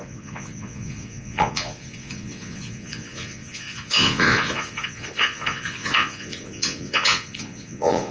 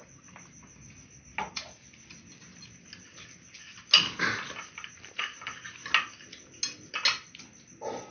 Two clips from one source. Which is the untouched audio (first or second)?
second